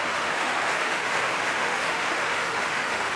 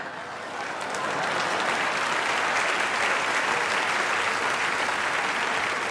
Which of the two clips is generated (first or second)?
first